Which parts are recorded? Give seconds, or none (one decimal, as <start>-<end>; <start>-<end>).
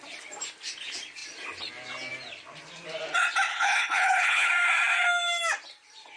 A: 0.0-3.5; 4.5-6.2